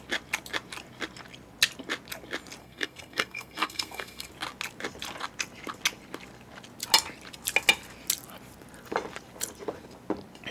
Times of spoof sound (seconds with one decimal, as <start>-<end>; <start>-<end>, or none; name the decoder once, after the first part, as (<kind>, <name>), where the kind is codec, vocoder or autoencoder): 2.6-4.3 (codec, SNAC)